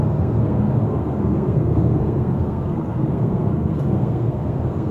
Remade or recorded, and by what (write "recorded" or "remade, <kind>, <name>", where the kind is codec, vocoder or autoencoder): remade, codec, SNAC